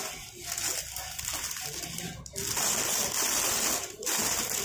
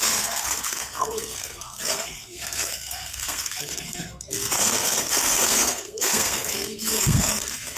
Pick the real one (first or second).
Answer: first